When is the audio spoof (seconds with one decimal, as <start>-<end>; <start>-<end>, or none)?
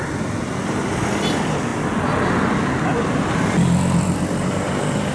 none